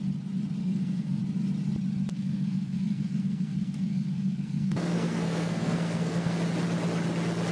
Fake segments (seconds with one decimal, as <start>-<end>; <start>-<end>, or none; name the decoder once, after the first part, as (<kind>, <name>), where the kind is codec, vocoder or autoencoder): 0.6-1.2 (codec, SNAC); 2.1-6.4